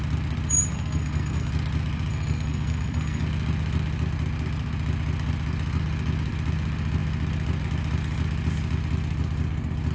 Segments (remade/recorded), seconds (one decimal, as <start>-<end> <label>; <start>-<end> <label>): 0.0-0.7 recorded; 0.7-1.5 remade; 1.5-2.1 recorded; 2.1-3.2 remade; 3.2-9.9 recorded